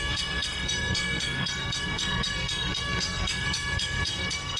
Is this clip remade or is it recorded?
remade